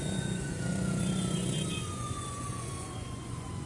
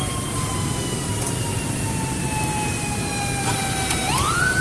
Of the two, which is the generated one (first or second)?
first